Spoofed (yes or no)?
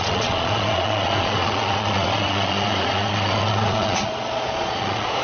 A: yes